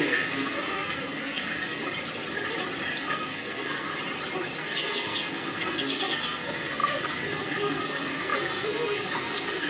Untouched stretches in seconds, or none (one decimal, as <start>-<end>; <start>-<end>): 1.8-3.0; 3.9-4.6